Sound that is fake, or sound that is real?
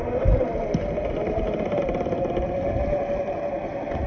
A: real